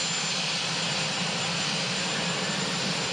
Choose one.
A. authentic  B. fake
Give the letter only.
A